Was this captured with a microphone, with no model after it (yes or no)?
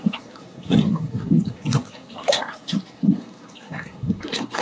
no